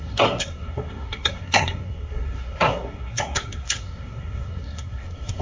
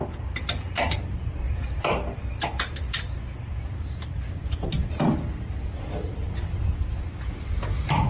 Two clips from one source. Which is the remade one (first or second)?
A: first